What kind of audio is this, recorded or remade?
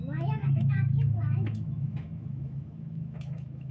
remade